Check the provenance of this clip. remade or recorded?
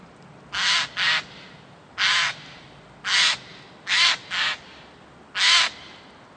recorded